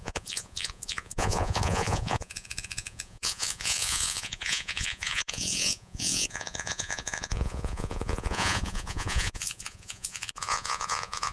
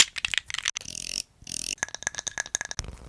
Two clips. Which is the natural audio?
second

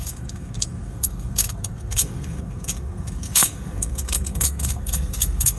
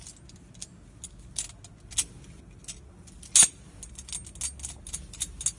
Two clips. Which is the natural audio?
second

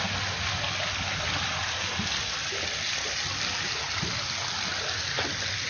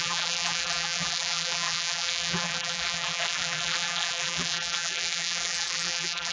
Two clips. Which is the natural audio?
first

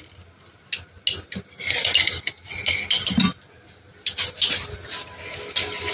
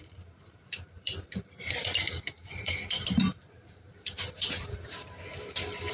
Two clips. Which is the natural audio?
first